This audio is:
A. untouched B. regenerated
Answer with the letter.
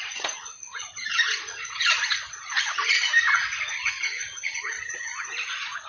B